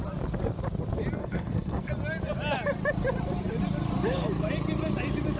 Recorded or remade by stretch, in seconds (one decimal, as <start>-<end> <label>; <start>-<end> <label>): 0.0-1.2 recorded; 1.2-1.9 remade; 1.9-5.4 recorded